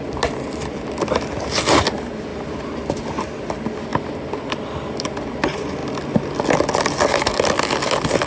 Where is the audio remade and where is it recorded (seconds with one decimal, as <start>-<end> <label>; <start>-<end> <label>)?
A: 0.0-8.3 recorded